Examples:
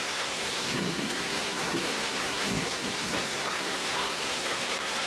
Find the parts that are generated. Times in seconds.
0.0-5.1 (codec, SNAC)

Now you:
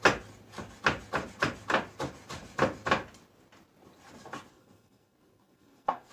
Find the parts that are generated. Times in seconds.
4.5-6.1 (codec, SNAC)

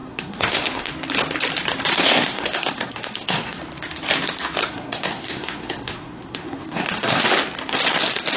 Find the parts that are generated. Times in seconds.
0.0-0.9 (codec, SNAC); 1.9-3.6; 4.6-7.2

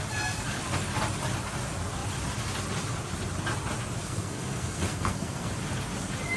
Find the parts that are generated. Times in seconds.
4.0-5.5 (codec, SNAC)

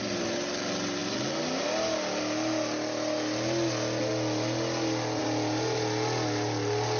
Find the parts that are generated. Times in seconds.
none

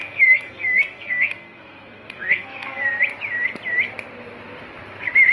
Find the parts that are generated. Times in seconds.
0.0-2.8 (codec, SNAC)